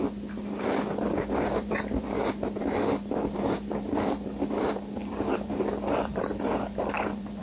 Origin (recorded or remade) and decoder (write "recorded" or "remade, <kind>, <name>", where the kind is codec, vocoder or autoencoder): remade, vocoder, BigVGAN v2